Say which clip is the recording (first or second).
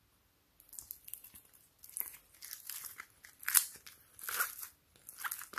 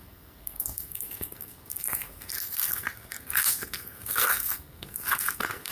first